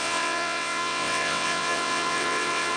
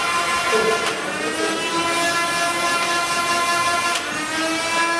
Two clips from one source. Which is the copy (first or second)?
first